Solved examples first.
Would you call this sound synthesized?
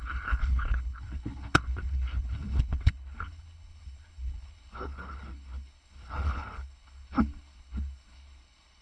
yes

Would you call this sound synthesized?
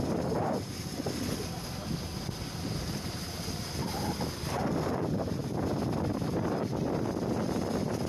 no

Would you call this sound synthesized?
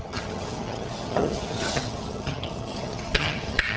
yes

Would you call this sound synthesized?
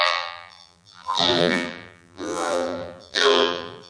yes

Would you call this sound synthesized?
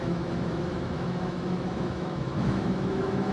yes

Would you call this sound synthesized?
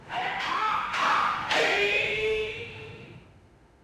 yes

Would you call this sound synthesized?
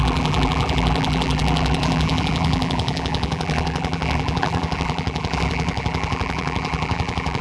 yes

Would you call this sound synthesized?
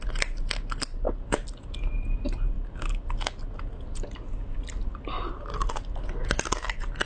no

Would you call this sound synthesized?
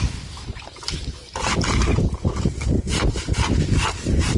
no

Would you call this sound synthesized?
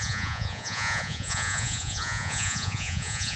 yes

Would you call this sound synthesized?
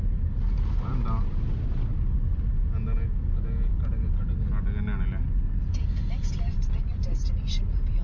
no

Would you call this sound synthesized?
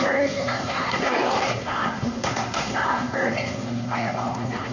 yes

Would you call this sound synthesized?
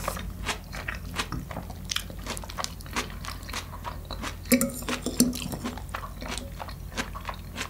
no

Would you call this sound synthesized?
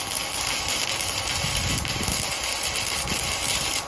no